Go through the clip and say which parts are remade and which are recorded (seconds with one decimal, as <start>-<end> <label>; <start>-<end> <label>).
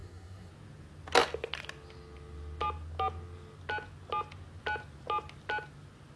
0.0-0.5 remade; 0.5-6.2 recorded